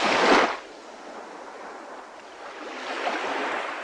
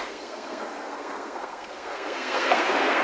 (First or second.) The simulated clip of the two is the second